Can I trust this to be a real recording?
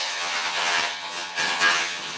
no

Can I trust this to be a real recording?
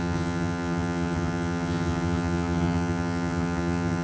no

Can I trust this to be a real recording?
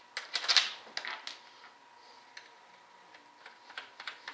yes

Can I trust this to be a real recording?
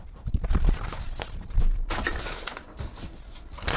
yes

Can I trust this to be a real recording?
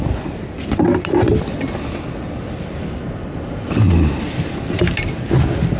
yes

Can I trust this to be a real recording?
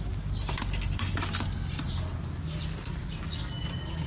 yes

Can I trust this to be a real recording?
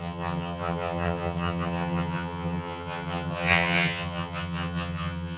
no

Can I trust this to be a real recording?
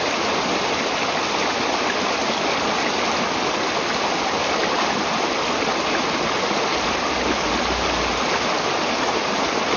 yes